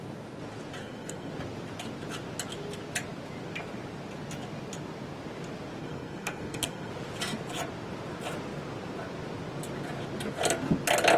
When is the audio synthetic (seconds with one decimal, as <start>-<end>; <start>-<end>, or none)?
0.8-1.3; 5.8-6.9